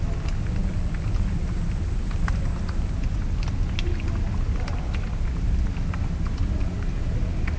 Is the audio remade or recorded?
recorded